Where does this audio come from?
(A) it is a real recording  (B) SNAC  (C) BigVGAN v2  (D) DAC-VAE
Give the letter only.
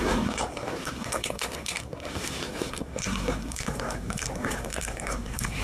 B